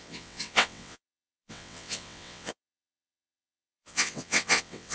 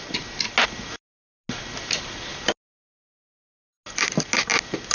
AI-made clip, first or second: first